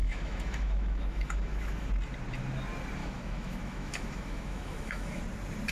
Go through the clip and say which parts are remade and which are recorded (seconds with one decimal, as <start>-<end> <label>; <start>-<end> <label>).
0.0-1.9 remade; 1.9-3.0 recorded; 3.0-5.2 remade; 5.2-5.7 recorded